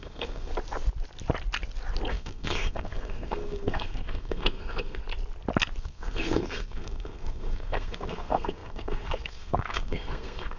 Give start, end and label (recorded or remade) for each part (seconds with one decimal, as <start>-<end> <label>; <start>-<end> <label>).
0.0-0.5 remade; 0.5-2.1 recorded; 2.1-5.0 remade; 5.0-5.8 recorded; 5.8-10.6 remade

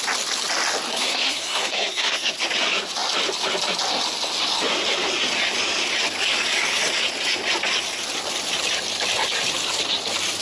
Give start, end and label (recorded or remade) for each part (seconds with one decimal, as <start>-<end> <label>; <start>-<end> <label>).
0.0-0.9 recorded; 0.9-2.3 remade; 2.3-10.4 recorded